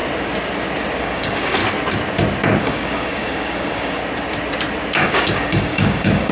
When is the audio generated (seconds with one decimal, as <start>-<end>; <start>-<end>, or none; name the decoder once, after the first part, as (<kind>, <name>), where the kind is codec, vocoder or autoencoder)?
1.0-1.6 (codec, DAC); 2.6-4.0; 5.0-6.3